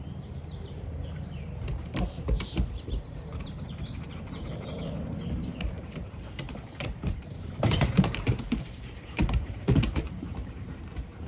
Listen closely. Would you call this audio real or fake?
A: fake